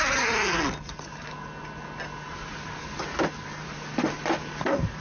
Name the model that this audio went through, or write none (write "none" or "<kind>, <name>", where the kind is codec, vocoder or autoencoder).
none